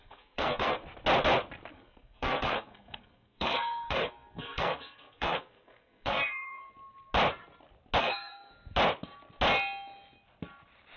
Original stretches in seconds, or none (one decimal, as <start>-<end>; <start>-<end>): 0.8-1.7; 6.7-8.0; 8.5-11.0